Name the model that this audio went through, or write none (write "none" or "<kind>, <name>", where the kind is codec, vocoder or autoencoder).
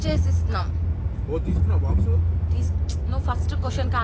none